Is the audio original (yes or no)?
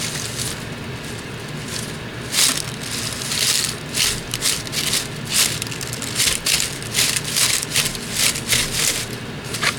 yes